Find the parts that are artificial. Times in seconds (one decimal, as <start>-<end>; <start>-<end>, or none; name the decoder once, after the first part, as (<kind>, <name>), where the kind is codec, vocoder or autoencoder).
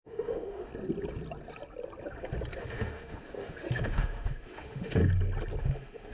0.0-0.7 (autoencoder, DAC-VAE); 2.6-5.0; 5.6-6.1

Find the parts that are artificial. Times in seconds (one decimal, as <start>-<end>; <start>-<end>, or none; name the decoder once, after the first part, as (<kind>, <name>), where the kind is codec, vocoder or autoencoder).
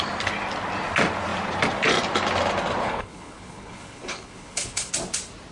2.8-4.9 (codec, HILCodec)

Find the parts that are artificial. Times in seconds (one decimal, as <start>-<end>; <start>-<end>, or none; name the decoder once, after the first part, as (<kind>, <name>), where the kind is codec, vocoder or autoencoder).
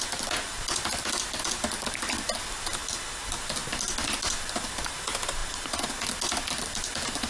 none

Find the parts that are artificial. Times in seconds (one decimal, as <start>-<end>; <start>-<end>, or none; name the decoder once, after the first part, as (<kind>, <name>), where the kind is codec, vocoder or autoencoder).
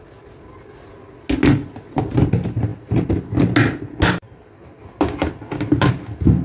none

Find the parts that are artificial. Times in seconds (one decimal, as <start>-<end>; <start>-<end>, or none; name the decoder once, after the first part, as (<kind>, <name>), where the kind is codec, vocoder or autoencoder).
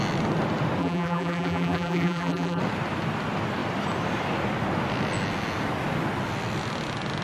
0.8-2.6 (vocoder, BigVGAN v2)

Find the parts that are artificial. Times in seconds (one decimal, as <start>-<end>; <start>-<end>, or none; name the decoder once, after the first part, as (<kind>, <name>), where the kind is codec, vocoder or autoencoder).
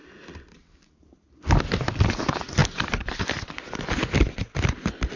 none